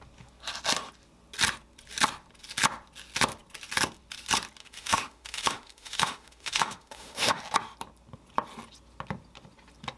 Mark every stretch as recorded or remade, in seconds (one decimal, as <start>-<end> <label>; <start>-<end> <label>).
0.0-4.6 recorded; 4.6-7.4 remade; 7.4-10.0 recorded